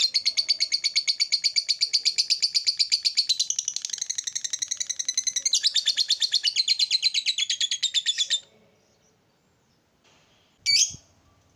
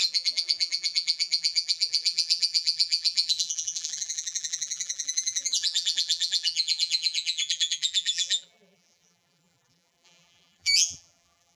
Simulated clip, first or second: second